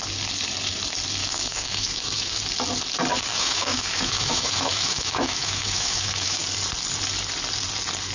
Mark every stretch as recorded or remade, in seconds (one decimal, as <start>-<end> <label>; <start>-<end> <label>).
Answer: 0.0-1.2 recorded; 1.2-2.4 remade; 2.4-3.3 recorded; 3.3-6.4 remade; 6.4-8.1 recorded